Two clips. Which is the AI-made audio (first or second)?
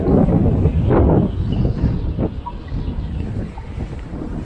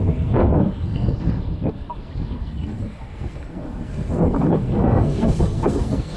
second